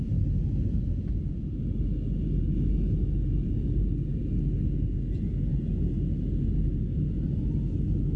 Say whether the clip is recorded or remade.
recorded